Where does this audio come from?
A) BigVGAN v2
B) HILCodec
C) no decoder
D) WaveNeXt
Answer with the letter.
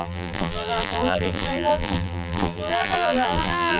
A